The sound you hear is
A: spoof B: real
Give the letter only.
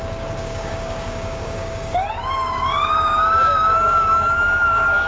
A